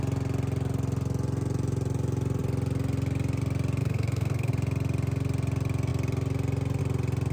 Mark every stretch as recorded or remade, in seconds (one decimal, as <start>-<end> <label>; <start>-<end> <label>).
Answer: 0.0-3.8 recorded; 3.8-4.5 remade; 4.5-7.3 recorded